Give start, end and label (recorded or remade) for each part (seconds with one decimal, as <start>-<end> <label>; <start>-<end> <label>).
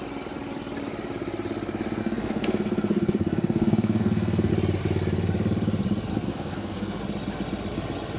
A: 0.0-2.0 recorded; 2.0-4.5 remade; 4.5-6.1 recorded; 6.1-7.0 remade; 7.0-8.2 recorded